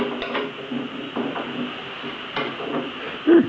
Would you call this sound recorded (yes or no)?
yes